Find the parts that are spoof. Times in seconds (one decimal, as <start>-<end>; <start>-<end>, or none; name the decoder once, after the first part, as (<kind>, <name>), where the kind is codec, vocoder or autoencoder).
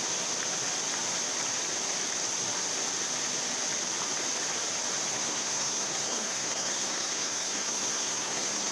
5.1-8.7 (codec, SNAC)